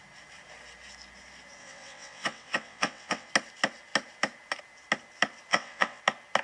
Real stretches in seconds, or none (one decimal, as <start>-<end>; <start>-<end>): 0.0-1.6; 3.3-5.5; 6.0-6.4